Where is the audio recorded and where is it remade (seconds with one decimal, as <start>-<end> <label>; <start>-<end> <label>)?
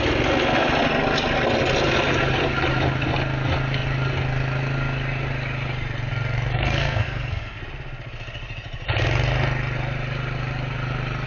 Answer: 0.0-6.5 recorded; 6.5-7.6 remade; 7.6-11.3 recorded